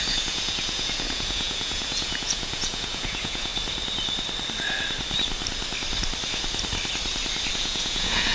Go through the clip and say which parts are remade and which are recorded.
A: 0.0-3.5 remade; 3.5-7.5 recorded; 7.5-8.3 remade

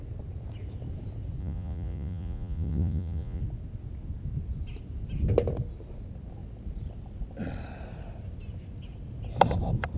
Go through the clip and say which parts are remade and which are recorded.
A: 0.0-1.4 recorded; 1.4-3.4 remade; 3.4-10.0 recorded

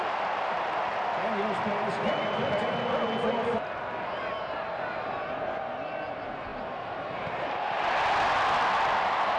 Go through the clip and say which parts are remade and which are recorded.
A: 0.0-9.4 recorded

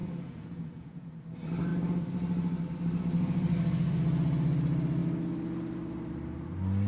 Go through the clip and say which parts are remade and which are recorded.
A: 0.0-1.1 remade; 1.1-6.9 recorded

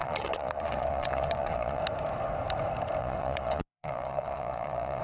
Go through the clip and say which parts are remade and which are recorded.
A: 0.0-1.8 remade; 1.8-3.0 recorded; 3.0-5.0 remade

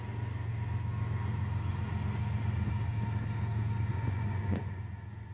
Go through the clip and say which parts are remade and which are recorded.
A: 0.0-3.9 recorded; 3.9-4.8 remade; 4.8-5.3 recorded

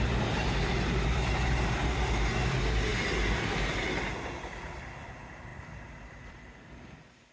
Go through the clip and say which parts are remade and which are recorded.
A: 0.0-7.3 recorded

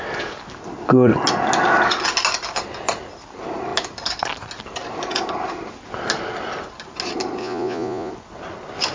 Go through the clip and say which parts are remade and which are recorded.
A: 0.0-7.4 recorded; 7.4-8.1 remade; 8.1-8.9 recorded